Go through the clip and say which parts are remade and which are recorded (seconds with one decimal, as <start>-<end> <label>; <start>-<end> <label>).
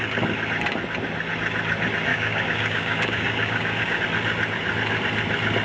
0.0-2.1 recorded; 2.1-4.0 remade; 4.0-5.6 recorded